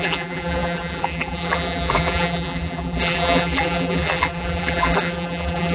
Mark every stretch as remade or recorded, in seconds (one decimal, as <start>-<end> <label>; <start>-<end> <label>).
0.0-5.7 remade

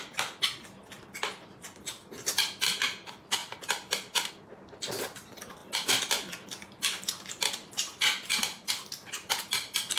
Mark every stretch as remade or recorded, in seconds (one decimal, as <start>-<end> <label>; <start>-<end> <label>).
0.0-10.0 recorded

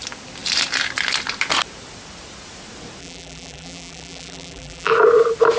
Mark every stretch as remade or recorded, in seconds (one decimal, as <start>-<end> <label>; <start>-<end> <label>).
0.0-3.0 recorded; 3.0-4.9 remade; 4.9-5.6 recorded

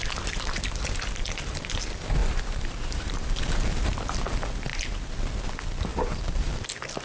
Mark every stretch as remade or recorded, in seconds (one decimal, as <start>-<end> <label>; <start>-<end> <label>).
0.0-2.2 recorded; 2.2-3.9 remade; 3.9-5.9 recorded; 5.9-6.5 remade; 6.5-7.0 recorded

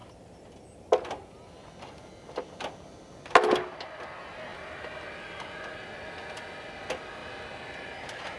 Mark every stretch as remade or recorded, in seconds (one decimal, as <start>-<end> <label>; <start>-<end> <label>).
0.0-4.5 recorded; 4.5-6.8 remade; 6.8-7.2 recorded; 7.2-8.4 remade

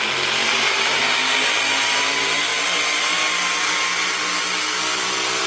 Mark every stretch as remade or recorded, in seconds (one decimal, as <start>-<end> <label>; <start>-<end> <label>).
0.0-0.4 recorded; 0.4-1.0 remade; 1.0-5.5 recorded

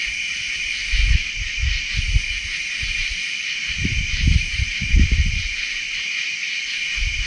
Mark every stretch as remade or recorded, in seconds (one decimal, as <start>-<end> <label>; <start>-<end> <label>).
0.0-3.0 recorded; 3.0-5.2 remade; 5.2-7.3 recorded

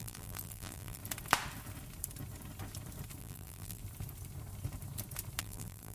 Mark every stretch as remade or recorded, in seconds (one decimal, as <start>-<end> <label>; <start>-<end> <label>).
0.0-1.0 remade; 1.0-3.2 recorded; 3.2-3.8 remade; 3.8-5.4 recorded; 5.4-5.9 remade